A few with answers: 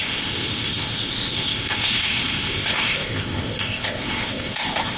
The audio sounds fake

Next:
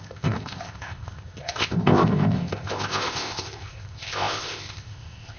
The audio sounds fake